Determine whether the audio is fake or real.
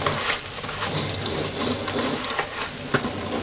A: real